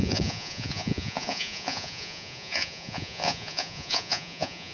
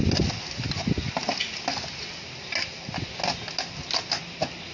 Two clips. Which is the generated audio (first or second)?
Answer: first